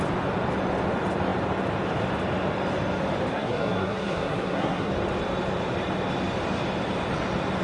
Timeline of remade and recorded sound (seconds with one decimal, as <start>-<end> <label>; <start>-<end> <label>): 0.0-3.3 recorded; 3.3-4.9 remade; 4.9-7.6 recorded